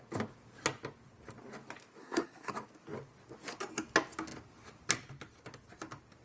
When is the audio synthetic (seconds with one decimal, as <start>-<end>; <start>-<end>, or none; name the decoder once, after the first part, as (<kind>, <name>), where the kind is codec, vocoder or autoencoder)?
2.0-2.5 (codec, SNAC)